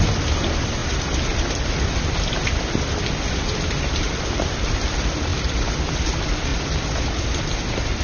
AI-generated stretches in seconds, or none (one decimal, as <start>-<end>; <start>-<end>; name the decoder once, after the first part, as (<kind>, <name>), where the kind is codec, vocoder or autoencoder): 0.0-0.8 (vocoder, BigVGAN v2); 3.3-6.5